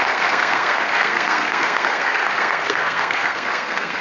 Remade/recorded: remade